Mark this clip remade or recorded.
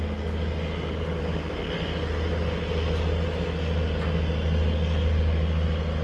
recorded